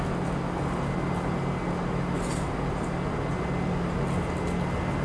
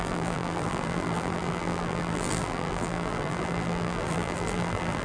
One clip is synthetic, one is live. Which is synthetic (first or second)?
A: second